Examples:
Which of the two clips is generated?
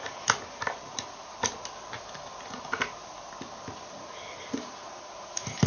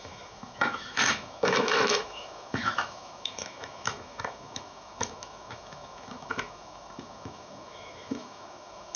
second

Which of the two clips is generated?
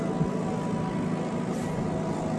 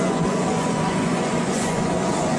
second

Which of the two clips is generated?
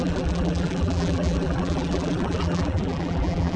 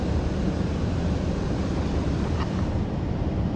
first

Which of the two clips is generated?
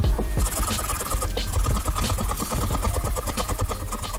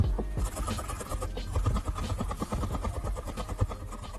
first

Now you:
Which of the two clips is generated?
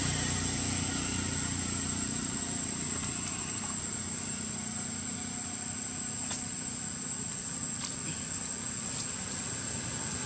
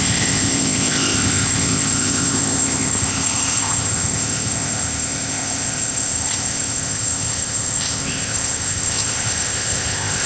second